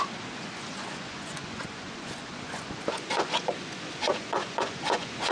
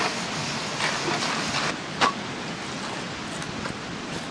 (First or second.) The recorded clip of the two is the second